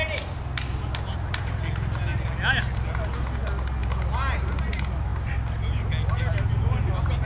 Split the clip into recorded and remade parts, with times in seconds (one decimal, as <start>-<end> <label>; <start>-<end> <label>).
0.0-7.2 recorded